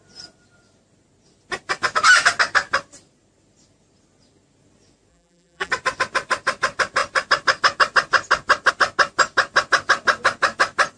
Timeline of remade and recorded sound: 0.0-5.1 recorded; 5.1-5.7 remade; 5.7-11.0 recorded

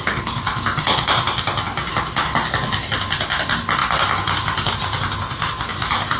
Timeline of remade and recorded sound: 0.0-6.2 recorded

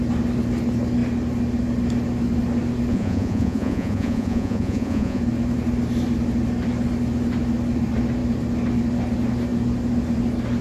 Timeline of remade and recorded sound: 0.0-2.9 recorded; 2.9-5.2 remade; 5.2-10.6 recorded

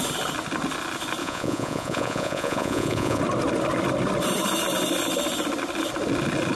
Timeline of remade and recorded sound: 0.0-1.2 recorded; 1.2-3.2 remade; 3.2-6.6 recorded

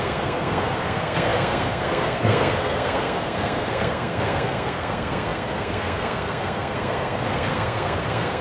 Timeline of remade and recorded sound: 0.0-8.4 remade